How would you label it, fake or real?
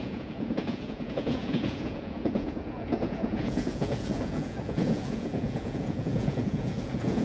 fake